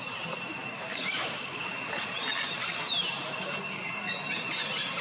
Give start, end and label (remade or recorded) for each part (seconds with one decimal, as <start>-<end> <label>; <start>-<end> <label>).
0.0-0.9 recorded; 0.9-1.7 remade; 1.7-5.0 recorded